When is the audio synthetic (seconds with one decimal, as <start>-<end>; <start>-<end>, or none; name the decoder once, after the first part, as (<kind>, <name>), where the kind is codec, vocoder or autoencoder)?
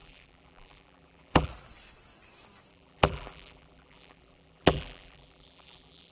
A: 0.0-1.5 (vocoder, BigVGAN v2); 2.7-6.1